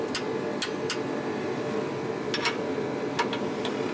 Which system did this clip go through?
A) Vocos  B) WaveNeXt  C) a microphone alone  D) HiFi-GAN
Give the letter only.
C